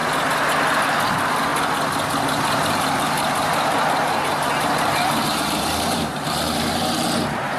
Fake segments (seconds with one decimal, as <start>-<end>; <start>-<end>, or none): 0.8-1.5; 2.3-7.6